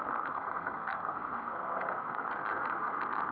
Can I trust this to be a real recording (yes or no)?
no